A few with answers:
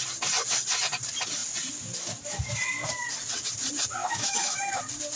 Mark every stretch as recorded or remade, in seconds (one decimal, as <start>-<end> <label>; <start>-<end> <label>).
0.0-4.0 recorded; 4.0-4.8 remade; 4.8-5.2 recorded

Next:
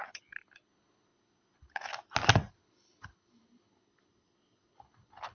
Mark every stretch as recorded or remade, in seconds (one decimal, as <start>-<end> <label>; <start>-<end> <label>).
0.0-1.9 remade; 1.9-2.5 recorded; 2.5-5.3 remade

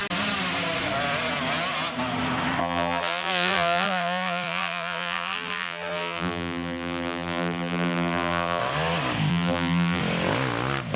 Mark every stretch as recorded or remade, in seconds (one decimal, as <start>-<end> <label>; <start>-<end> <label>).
0.0-2.6 recorded; 2.6-8.6 remade; 8.6-9.3 recorded; 9.3-10.0 remade; 10.0-11.0 recorded

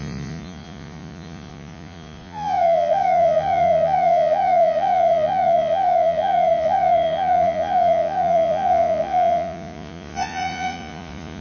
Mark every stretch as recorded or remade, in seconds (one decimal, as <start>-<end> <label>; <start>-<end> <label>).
0.0-11.4 remade

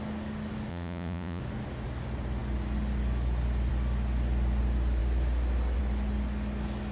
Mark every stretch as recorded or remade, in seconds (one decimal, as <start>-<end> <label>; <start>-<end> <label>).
0.0-0.7 recorded; 0.7-1.4 remade; 1.4-6.9 recorded

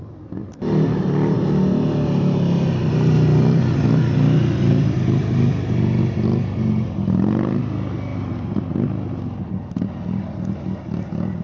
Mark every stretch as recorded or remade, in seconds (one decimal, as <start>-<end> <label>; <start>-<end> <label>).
0.0-11.4 recorded